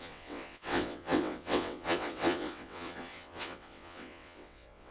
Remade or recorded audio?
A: remade